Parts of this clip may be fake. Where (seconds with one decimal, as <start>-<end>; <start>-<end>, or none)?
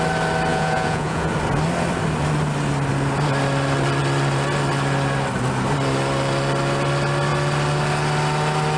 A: 0.5-1.3